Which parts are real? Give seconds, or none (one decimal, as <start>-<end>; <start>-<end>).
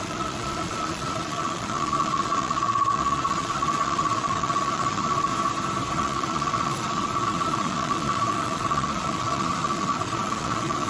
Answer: 5.3-5.9